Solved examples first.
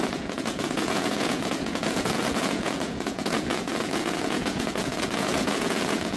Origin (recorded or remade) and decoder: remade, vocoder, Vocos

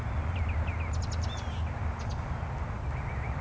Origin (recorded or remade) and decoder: recorded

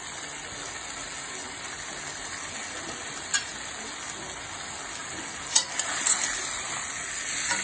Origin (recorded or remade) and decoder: recorded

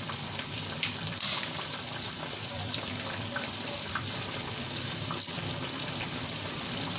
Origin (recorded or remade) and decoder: remade, vocoder, BigVGAN v2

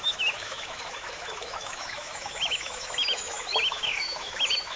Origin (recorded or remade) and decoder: remade, autoencoder, DAC-VAE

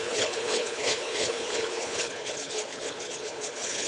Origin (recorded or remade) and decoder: remade, codec, HILCodec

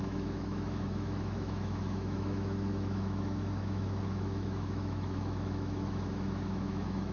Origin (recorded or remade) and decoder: remade, autoencoder, DAC-VAE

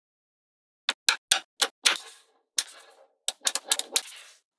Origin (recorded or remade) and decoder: recorded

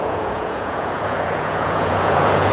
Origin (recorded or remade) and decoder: remade, vocoder, Vocos